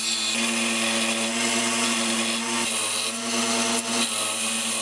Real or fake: real